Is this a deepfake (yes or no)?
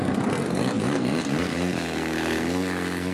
yes